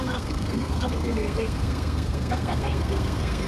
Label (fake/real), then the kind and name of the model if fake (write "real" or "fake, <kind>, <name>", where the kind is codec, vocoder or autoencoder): fake, codec, SNAC